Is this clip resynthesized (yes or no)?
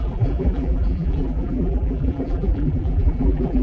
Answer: yes